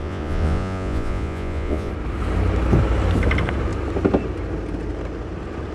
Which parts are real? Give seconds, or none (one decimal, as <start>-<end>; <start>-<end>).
1.9-5.7